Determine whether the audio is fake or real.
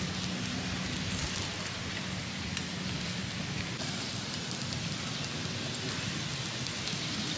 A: real